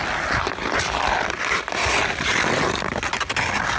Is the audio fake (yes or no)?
no